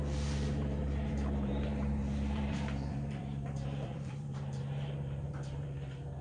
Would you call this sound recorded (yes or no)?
no